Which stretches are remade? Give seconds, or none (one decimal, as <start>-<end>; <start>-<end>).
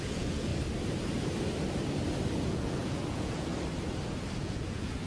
0.0-0.5; 2.4-3.5; 4.4-5.1